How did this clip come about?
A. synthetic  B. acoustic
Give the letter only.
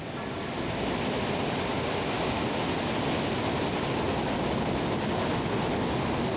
B